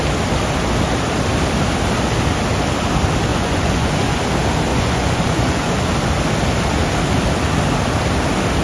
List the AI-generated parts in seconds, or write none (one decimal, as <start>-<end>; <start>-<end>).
3.3-4.2; 4.7-5.7